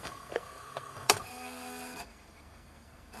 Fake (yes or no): yes